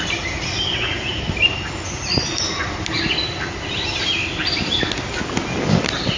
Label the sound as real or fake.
real